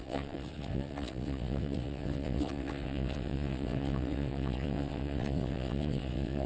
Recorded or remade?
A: remade